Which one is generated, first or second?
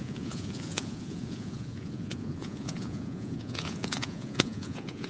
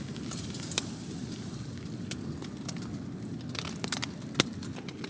first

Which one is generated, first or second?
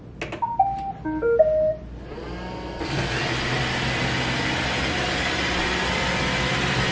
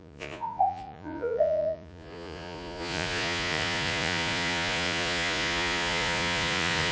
second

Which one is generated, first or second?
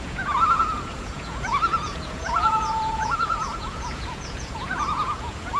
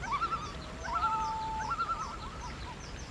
first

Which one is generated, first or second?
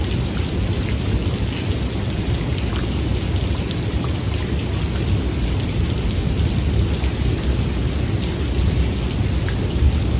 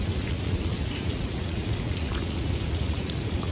second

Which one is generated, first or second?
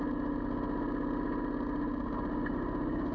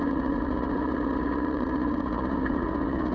second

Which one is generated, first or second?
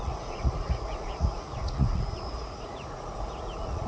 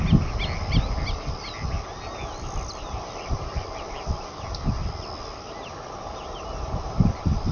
first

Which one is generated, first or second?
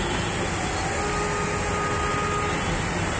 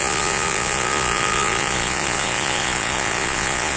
second